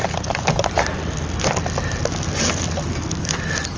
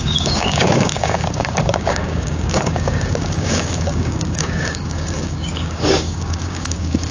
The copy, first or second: second